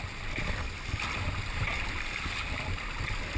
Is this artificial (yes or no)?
no